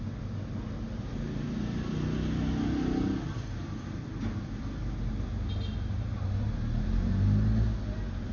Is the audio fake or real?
real